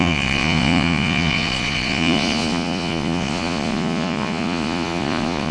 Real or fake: fake